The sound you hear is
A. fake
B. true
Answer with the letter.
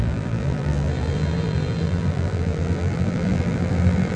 A